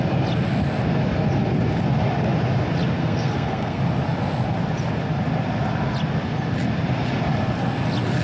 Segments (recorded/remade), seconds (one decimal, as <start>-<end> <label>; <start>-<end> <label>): 0.0-3.0 recorded; 3.0-3.8 remade; 3.8-8.2 recorded